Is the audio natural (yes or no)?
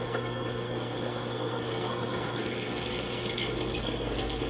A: no